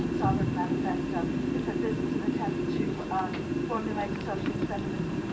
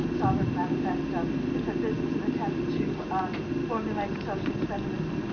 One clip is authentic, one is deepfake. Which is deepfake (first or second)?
first